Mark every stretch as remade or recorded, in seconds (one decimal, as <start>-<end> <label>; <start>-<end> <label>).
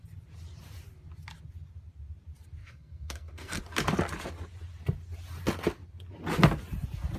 0.0-2.6 recorded; 2.6-3.6 remade; 3.6-7.2 recorded